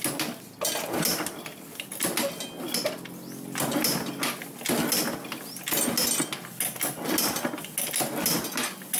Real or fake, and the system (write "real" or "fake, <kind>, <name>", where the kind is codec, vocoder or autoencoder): real